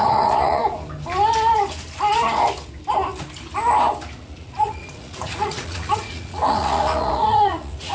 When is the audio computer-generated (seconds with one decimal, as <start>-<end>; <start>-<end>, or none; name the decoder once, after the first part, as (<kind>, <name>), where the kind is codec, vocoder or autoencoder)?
0.0-0.6 (vocoder, Vocos); 4.2-7.9